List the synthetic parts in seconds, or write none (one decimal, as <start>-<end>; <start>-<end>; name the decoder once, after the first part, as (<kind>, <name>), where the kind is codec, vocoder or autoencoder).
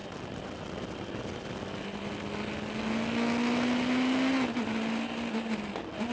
none